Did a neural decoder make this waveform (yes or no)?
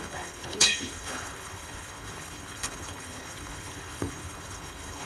yes